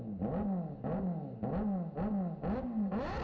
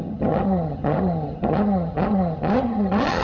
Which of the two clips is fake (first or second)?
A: second